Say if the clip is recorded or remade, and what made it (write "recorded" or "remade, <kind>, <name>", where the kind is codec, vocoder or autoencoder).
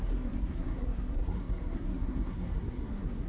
remade, codec, SNAC